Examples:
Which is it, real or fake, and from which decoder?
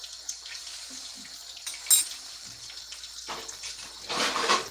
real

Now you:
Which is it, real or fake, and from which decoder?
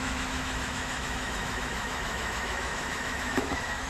fake, autoencoder, DAC-VAE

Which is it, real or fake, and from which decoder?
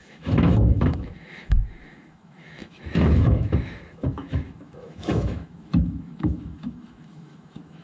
fake, autoencoder, DAC-VAE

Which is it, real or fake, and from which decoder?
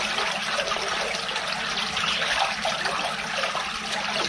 real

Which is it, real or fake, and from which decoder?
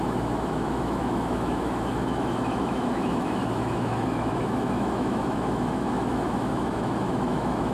fake, autoencoder, DAC-VAE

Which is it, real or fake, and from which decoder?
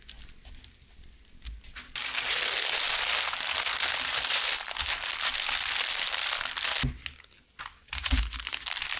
real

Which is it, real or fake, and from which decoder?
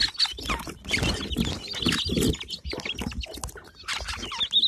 real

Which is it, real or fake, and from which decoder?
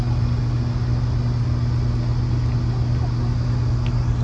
real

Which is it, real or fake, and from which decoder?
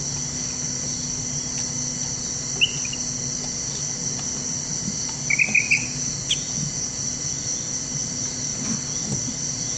real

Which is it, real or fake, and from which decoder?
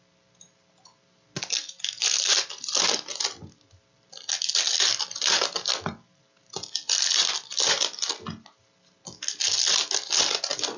real